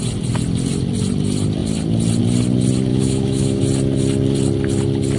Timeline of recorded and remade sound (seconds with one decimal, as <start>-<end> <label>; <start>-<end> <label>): 0.0-2.9 recorded; 2.9-3.6 remade; 3.6-5.2 recorded